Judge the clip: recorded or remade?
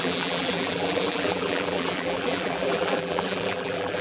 remade